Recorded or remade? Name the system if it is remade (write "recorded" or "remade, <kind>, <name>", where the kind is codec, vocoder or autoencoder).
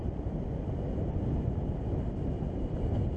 recorded